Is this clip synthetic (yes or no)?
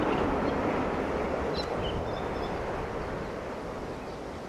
no